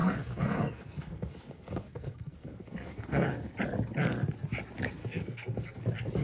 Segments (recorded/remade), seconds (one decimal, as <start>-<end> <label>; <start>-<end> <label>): 0.0-3.5 remade; 3.5-5.0 recorded; 5.0-5.8 remade; 5.8-6.2 recorded